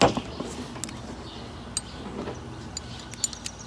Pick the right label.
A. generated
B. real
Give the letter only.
B